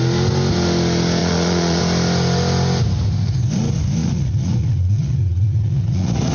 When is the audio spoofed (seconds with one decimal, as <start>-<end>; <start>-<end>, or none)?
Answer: 1.2-1.8; 4.0-6.3